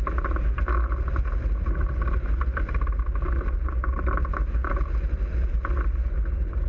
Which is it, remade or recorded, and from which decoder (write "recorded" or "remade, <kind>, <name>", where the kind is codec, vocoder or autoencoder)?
recorded